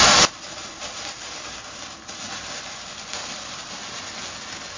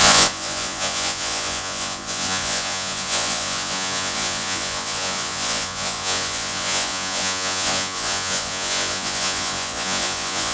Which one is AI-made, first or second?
second